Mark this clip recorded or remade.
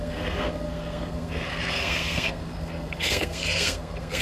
remade